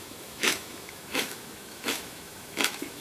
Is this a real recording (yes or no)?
no